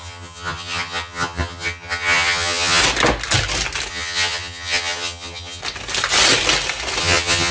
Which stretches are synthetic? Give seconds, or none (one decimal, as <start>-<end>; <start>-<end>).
0.0-2.8; 3.9-5.6; 7.0-7.5